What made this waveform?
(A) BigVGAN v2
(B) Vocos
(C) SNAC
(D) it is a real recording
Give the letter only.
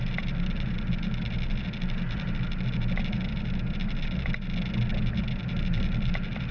D